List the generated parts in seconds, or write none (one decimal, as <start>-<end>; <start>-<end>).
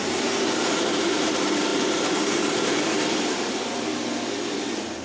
0.0-3.9